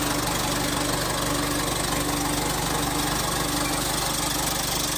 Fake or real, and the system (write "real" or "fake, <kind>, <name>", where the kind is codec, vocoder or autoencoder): real